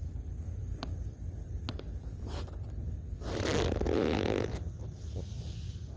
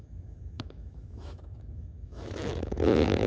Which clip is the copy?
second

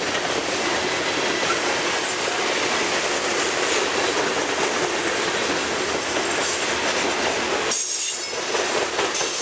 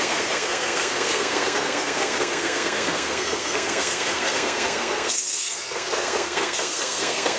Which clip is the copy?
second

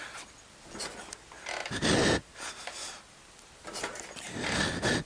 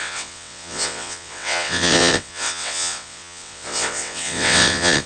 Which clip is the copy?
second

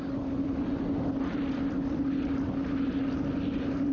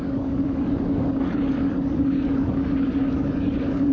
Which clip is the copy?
second